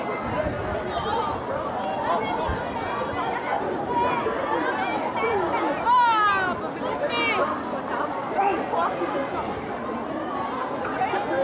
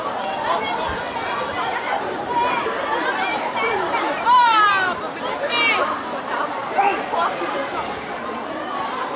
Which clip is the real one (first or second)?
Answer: first